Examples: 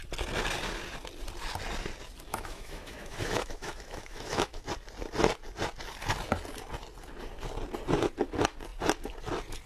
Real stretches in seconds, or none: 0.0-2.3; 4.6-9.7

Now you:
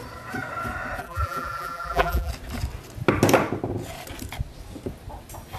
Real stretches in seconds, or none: 0.0-1.0; 2.3-5.6

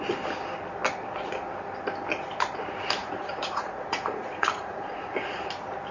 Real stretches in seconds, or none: 0.0-3.0; 5.4-5.9